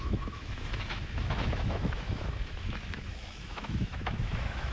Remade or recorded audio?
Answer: remade